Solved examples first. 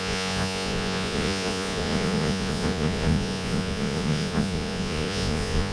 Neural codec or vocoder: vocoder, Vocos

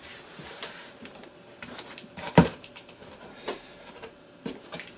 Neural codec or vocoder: vocoder, BigVGAN v2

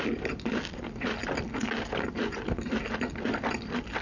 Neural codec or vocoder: none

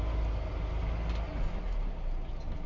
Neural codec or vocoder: none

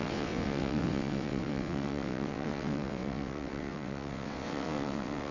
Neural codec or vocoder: vocoder, WaveNeXt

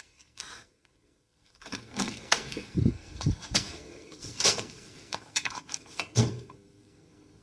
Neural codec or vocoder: codec, SNAC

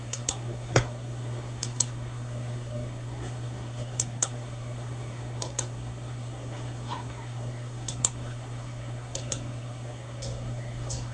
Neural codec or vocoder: codec, SNAC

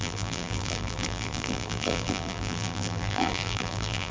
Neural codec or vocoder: vocoder, BigVGAN v2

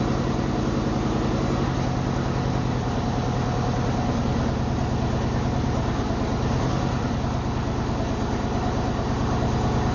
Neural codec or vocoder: none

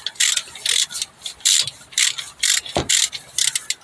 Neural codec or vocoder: none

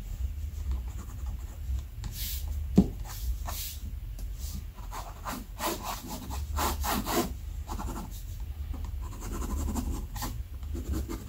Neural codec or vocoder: none